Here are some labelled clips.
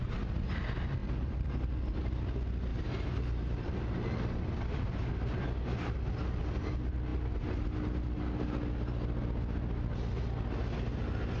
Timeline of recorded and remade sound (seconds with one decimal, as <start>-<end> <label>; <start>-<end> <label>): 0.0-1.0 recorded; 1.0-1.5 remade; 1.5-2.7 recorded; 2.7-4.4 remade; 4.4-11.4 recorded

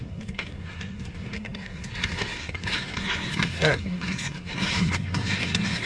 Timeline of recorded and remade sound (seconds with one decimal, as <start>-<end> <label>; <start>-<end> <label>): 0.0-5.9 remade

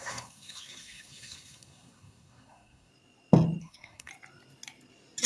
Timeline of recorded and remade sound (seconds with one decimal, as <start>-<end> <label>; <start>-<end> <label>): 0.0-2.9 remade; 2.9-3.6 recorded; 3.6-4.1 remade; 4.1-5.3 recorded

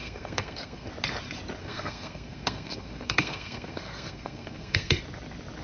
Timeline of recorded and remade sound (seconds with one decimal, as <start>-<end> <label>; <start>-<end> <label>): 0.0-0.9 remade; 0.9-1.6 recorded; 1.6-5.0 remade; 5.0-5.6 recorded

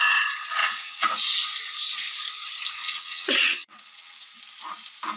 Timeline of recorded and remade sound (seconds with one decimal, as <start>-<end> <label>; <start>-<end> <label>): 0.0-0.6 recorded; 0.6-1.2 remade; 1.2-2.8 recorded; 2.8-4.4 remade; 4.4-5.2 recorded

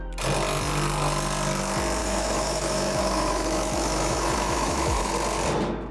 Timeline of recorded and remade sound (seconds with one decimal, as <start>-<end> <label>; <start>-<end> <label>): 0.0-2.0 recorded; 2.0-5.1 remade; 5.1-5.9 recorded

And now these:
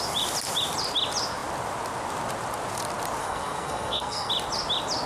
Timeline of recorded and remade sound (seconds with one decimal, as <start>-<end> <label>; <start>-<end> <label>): 0.0-3.2 recorded; 3.2-4.3 remade; 4.3-5.1 recorded